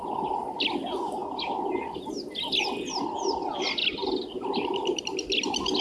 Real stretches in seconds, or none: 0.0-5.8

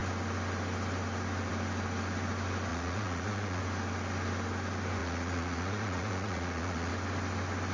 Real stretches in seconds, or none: 0.0-2.7; 3.6-5.0; 6.9-7.7

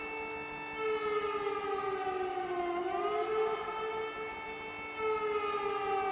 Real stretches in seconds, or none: 0.0-6.1